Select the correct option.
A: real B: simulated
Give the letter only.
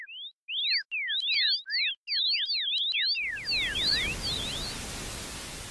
A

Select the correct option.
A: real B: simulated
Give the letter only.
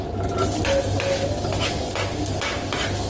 A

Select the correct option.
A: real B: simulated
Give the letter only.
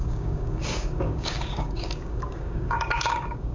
B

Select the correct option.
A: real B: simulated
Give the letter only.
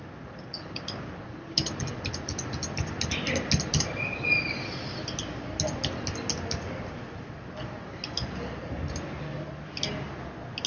A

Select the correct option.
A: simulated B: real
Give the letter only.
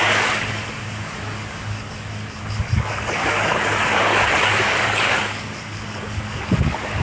A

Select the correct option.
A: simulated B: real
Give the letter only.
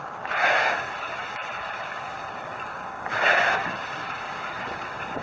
A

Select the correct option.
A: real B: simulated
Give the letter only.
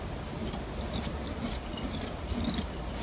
A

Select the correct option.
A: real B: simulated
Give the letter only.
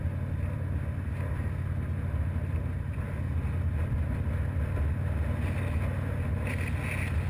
A